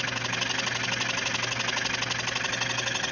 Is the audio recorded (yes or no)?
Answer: yes